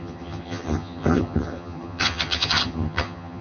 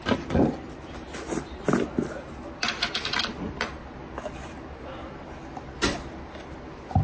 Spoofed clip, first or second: first